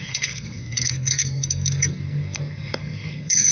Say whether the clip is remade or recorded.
remade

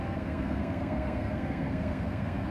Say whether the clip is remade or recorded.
remade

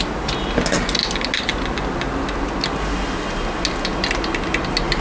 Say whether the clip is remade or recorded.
recorded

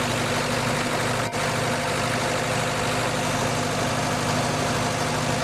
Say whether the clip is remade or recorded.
recorded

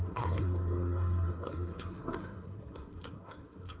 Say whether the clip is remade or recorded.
remade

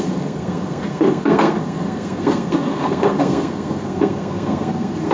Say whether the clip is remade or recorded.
remade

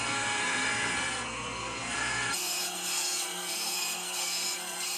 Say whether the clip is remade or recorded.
remade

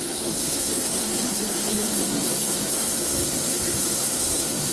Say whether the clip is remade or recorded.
remade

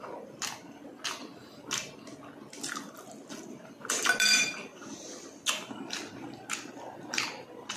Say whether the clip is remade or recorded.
recorded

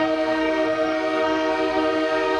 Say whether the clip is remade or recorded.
remade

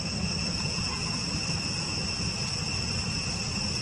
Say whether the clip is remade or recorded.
recorded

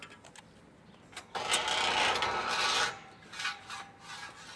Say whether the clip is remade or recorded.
recorded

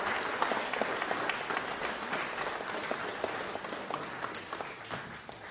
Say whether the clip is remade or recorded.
recorded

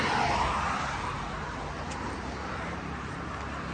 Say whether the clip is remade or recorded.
recorded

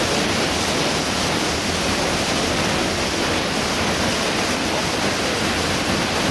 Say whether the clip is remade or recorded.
recorded